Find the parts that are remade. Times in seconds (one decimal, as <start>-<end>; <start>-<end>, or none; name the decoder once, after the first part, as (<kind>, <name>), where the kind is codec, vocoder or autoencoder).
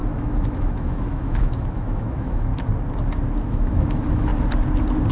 0.0-2.5 (autoencoder, DAC-VAE); 3.5-4.3